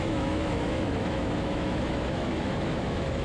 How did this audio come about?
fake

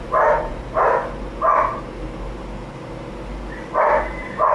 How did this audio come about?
real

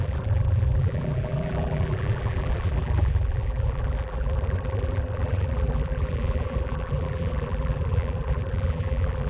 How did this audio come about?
fake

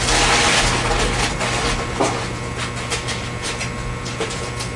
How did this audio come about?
real